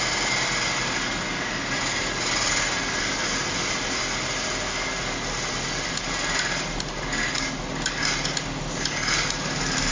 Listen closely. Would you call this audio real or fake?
real